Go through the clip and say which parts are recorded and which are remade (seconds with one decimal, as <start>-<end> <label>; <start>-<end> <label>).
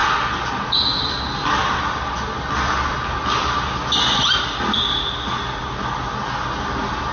0.0-7.1 recorded